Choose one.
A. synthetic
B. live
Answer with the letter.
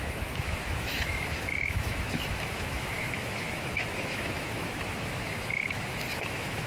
A